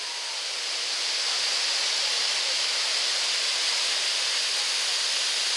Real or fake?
real